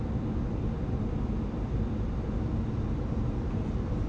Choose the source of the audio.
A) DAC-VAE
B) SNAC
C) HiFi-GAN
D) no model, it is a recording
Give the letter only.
D